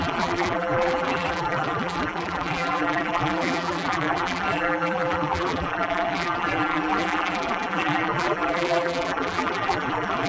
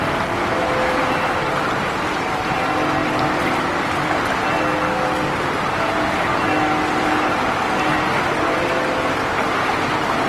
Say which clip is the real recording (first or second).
second